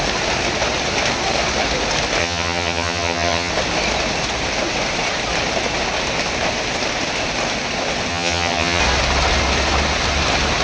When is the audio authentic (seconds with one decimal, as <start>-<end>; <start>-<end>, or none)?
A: 0.0-2.2; 3.5-8.1; 8.8-10.6

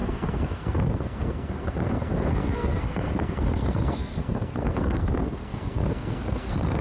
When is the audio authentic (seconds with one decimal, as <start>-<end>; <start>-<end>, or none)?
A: none

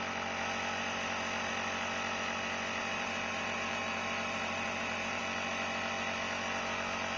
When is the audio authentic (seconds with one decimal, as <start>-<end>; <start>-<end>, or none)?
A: 0.0-2.8; 5.2-7.2

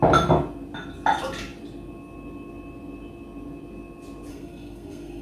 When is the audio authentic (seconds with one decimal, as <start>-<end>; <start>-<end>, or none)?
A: 0.0-4.3

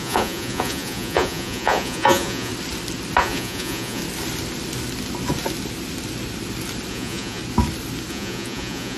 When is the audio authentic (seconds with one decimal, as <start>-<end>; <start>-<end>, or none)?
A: 2.5-3.2; 4.0-6.9; 7.4-8.1

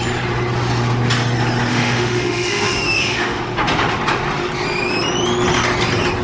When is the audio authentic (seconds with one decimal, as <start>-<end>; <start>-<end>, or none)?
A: 0.0-1.7; 3.4-6.2

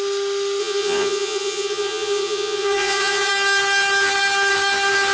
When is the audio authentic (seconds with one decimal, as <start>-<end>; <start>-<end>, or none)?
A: 0.0-0.6; 3.3-5.1

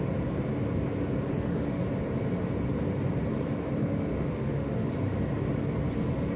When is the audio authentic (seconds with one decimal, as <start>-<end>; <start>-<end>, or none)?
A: 0.0-1.3; 1.8-3.8; 4.9-6.4